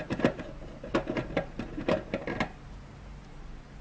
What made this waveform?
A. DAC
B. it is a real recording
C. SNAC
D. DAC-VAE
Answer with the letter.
B